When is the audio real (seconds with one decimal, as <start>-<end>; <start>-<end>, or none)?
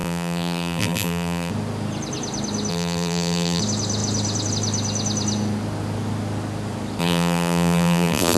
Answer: 1.5-2.7; 3.6-7.0